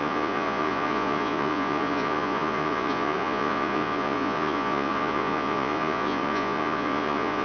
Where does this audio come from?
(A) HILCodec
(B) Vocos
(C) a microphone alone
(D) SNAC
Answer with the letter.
B